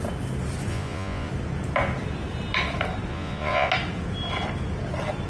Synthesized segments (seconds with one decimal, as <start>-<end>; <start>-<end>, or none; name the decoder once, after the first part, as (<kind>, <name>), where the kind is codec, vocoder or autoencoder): 0.7-1.3 (vocoder, Vocos); 3.1-3.7